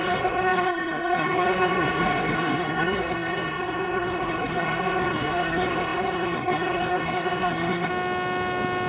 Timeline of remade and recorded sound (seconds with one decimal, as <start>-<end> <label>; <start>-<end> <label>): 0.0-7.9 remade; 7.9-8.9 recorded